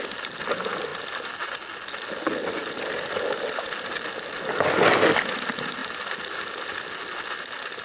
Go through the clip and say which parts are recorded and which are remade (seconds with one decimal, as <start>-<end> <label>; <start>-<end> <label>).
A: 0.0-7.8 recorded